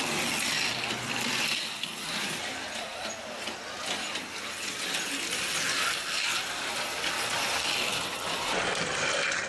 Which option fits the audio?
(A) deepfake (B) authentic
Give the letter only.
B